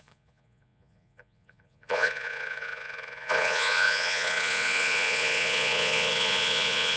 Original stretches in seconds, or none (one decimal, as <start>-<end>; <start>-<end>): none